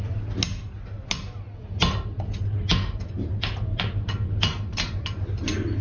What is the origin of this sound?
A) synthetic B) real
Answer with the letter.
B